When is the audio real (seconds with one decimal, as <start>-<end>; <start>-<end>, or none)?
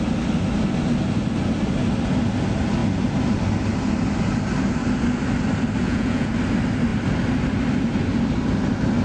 0.0-5.8; 6.3-9.0